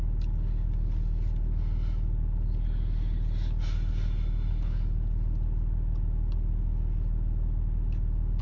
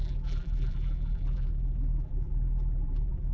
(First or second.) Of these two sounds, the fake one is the second